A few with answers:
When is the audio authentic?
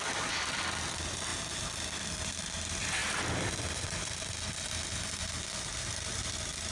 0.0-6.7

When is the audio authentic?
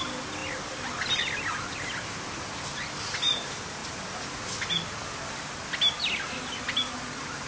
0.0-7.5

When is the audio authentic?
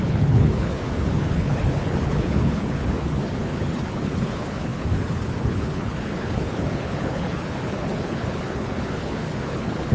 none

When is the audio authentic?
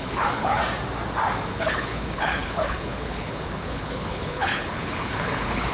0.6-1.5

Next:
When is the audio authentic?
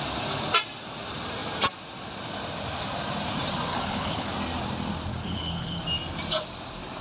0.0-3.7; 4.3-5.1; 5.8-7.0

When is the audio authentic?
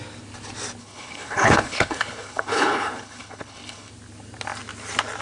0.0-0.8; 3.9-5.2